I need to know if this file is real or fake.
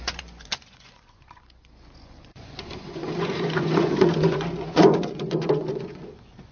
fake